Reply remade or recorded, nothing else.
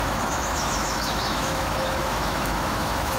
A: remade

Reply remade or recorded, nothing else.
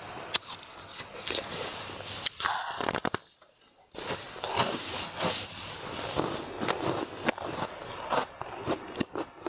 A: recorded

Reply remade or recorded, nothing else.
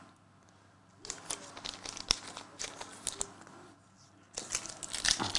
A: recorded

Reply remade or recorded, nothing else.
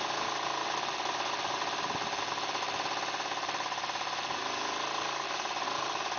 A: recorded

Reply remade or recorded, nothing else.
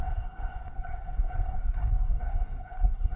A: remade